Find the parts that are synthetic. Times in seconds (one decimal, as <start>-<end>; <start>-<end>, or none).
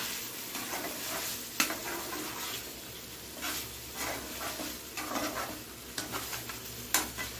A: none